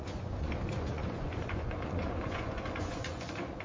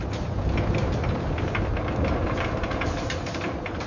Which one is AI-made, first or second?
first